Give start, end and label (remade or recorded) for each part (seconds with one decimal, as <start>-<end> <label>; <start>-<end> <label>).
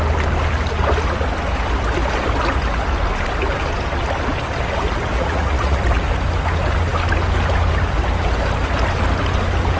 0.0-5.1 recorded; 5.1-5.8 remade; 5.8-9.8 recorded